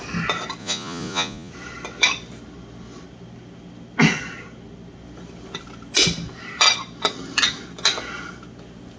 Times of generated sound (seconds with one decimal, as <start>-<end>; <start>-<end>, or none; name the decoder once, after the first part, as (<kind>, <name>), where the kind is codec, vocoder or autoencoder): 0.6-1.5 (vocoder, Vocos)